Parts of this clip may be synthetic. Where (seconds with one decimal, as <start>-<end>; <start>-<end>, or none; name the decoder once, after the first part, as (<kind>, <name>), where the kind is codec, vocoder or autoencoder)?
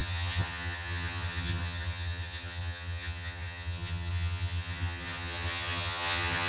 0.0-6.5 (vocoder, HiFi-GAN)